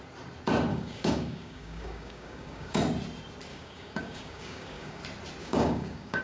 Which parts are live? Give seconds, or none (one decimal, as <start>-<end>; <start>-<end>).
0.0-0.7; 2.8-3.5; 5.0-5.4